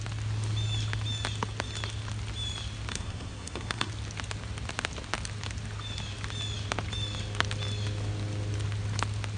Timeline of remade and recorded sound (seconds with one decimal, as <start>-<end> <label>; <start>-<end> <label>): 0.0-2.9 recorded; 2.9-3.9 remade; 3.9-9.4 recorded